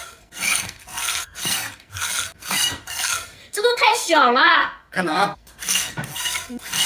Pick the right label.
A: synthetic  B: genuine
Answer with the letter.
A